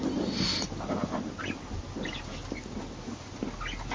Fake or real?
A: real